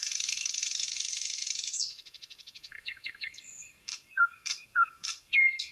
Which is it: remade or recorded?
remade